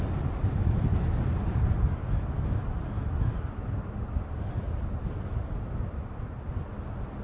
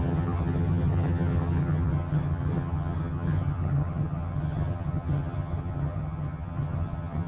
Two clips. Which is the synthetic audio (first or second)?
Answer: second